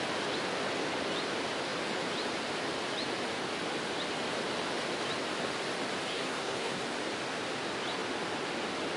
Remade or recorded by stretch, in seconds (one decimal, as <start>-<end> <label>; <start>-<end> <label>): 0.0-6.1 recorded; 6.1-6.8 remade; 6.8-9.0 recorded